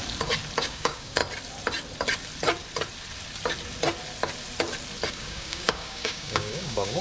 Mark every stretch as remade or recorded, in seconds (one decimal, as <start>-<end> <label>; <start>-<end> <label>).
0.0-0.6 recorded; 0.6-1.2 remade; 1.2-5.1 recorded; 5.1-7.0 remade